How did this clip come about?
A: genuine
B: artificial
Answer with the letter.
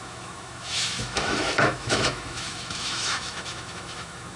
B